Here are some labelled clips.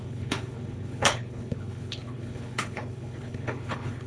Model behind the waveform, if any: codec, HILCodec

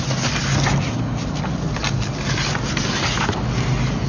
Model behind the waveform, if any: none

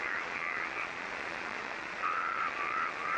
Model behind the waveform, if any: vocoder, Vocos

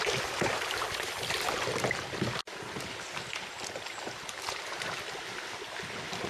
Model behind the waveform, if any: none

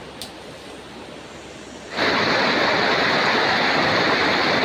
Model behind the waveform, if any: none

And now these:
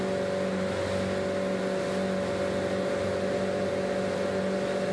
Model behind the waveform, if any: none